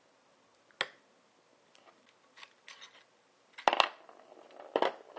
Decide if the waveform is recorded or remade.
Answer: recorded